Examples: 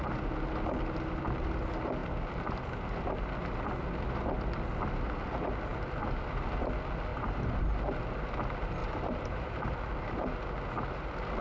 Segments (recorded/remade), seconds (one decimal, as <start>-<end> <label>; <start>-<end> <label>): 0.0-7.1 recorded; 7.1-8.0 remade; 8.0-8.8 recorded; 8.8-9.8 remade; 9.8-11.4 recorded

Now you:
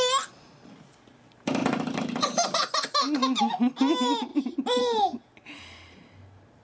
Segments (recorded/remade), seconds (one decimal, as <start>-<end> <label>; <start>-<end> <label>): 0.0-6.6 recorded

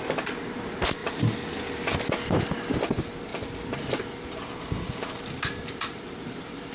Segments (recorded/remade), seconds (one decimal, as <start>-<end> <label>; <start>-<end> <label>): 0.0-1.0 remade; 1.0-2.9 recorded; 2.9-3.3 remade; 3.3-4.2 recorded; 4.2-6.7 remade

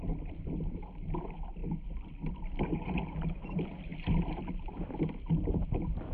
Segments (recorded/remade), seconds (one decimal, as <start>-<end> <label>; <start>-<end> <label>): 0.0-6.1 recorded